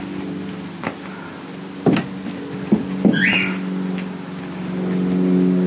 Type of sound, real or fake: real